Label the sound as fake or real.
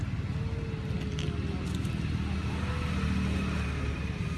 real